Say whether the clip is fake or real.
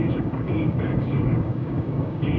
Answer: fake